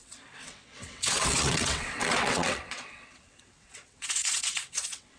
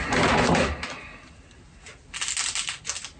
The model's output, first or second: first